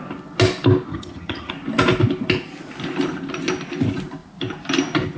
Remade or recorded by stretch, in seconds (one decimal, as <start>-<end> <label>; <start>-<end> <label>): 0.0-0.9 recorded; 0.9-1.5 remade; 1.5-5.2 recorded